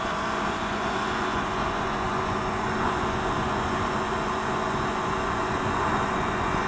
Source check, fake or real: fake